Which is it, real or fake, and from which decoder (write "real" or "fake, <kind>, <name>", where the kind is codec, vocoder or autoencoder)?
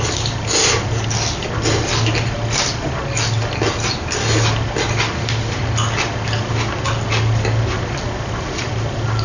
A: real